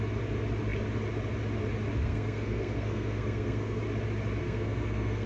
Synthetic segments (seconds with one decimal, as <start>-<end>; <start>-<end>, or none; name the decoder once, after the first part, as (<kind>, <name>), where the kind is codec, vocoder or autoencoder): 2.0-3.8 (codec, SNAC); 4.4-5.3